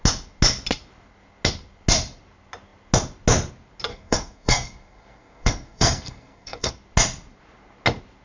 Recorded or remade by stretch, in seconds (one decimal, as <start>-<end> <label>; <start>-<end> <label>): 0.0-3.9 recorded; 3.9-6.7 remade; 6.7-8.2 recorded